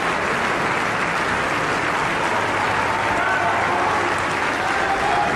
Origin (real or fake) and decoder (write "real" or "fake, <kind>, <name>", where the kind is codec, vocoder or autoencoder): real